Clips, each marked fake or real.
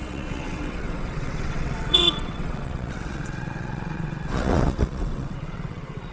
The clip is fake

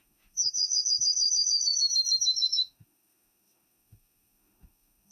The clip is fake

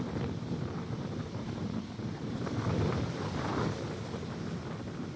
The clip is real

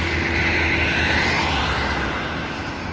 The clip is real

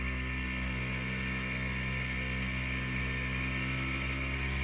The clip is real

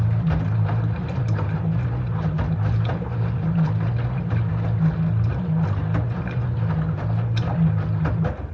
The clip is real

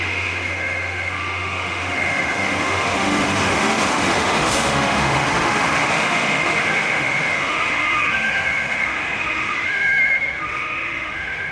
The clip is fake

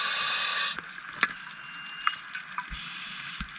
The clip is real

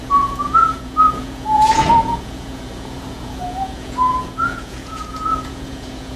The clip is fake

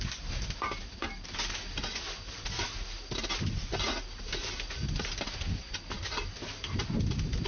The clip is real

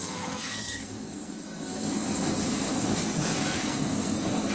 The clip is fake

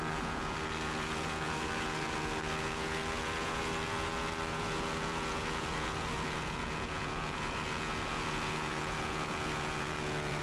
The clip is fake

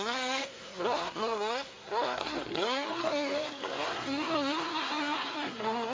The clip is fake